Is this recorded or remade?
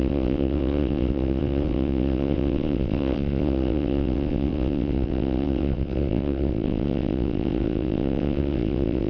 remade